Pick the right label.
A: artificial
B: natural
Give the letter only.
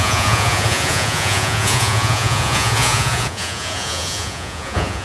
A